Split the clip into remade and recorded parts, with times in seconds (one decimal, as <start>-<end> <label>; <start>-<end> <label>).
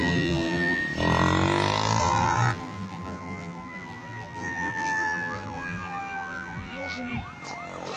0.0-0.8 remade; 0.8-2.0 recorded; 2.0-7.1 remade; 7.1-8.0 recorded